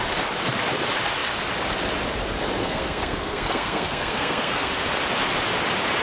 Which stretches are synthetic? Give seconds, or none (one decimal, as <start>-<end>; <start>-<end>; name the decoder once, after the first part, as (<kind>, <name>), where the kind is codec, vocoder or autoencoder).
2.6-4.7 (codec, SNAC)